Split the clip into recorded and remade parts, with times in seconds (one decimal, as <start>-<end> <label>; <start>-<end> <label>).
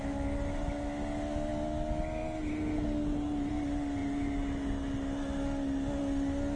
0.0-6.6 recorded